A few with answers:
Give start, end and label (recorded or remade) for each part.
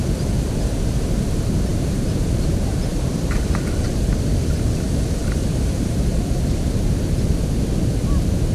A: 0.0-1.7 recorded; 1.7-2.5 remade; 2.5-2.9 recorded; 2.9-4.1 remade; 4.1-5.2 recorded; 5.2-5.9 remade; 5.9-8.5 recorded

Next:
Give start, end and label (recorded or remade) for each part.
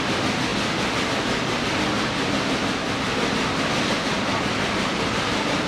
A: 0.0-5.7 recorded